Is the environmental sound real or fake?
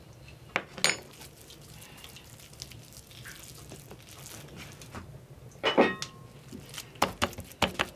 real